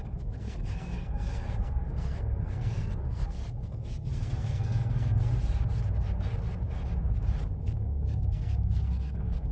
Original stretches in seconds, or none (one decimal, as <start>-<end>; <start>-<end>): 5.3-7.6